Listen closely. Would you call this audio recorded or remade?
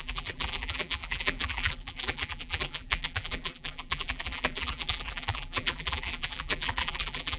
remade